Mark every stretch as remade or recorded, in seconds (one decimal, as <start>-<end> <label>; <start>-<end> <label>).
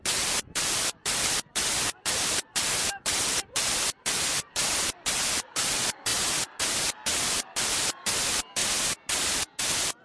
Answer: 0.0-6.1 remade; 6.1-6.8 recorded; 6.8-8.6 remade; 8.6-9.6 recorded; 9.6-10.0 remade